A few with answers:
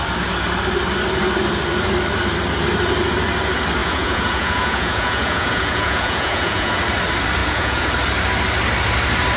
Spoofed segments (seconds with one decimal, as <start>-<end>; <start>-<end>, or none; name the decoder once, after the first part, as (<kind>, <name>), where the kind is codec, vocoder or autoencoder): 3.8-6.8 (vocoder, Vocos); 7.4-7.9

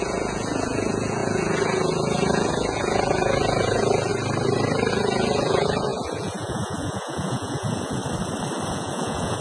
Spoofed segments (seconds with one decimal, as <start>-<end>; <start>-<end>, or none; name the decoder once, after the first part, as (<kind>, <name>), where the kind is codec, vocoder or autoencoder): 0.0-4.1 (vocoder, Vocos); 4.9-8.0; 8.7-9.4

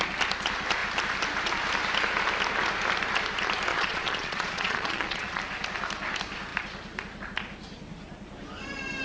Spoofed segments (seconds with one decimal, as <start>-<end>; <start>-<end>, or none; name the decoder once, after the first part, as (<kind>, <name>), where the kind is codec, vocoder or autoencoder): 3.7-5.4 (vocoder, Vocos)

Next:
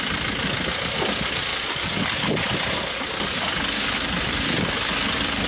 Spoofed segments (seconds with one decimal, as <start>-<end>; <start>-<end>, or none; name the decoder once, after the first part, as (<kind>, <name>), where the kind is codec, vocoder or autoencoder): none

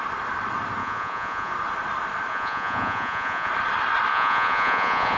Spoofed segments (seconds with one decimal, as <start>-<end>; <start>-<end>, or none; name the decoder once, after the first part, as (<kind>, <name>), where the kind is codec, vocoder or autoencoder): 0.8-1.5 (vocoder, Vocos); 2.3-3.5; 4.1-5.2